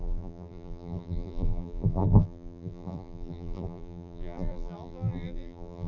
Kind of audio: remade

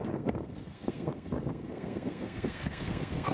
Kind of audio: remade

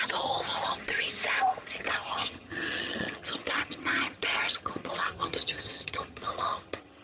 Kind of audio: remade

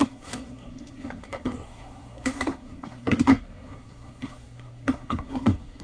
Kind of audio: remade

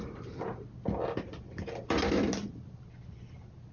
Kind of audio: recorded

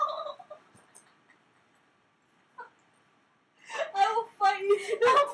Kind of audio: recorded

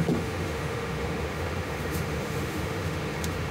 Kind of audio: remade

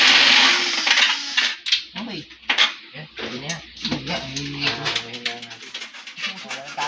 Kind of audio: recorded